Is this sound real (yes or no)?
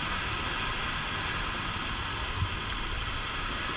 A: yes